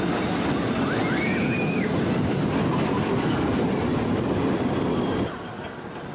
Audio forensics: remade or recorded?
recorded